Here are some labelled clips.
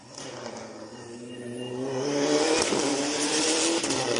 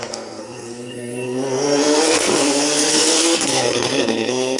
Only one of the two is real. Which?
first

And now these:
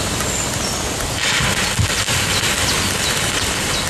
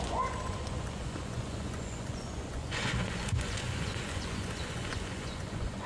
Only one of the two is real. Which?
first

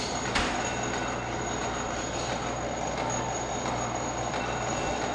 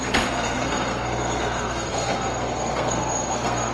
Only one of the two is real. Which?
first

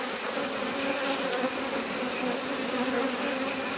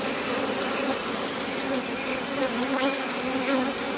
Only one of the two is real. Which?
second